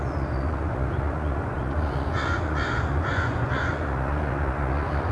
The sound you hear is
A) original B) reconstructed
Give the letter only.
B